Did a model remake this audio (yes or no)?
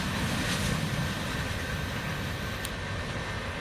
no